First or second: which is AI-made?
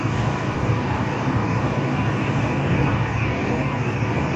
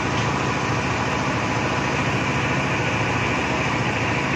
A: first